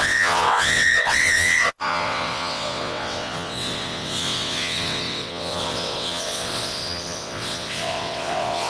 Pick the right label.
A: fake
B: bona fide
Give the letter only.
A